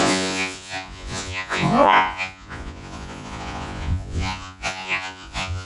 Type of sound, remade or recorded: remade